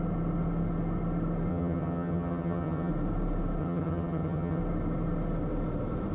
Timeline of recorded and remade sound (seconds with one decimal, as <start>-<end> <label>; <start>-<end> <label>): 0.0-1.5 recorded; 1.5-2.9 remade; 2.9-3.6 recorded; 3.6-4.6 remade; 4.6-6.1 recorded